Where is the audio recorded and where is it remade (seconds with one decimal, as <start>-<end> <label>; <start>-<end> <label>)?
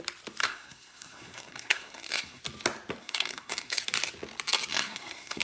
0.0-0.4 recorded; 0.4-2.4 remade; 2.4-3.0 recorded; 3.0-3.8 remade; 3.8-4.7 recorded; 4.7-5.4 remade